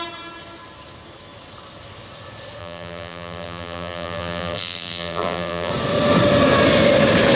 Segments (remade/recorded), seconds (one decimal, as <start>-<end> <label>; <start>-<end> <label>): 0.0-2.6 recorded; 2.6-5.7 remade; 5.7-7.4 recorded